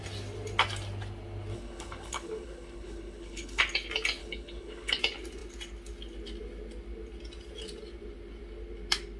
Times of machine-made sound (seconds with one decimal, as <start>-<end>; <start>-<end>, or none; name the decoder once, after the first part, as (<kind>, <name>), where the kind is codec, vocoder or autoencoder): 1.5-3.6 (codec, HILCodec); 4.2-5.0